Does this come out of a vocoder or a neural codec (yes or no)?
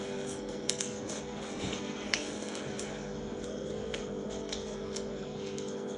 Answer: yes